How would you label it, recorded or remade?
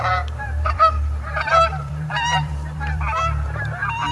remade